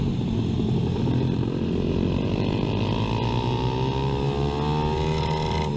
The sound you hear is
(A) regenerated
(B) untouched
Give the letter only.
B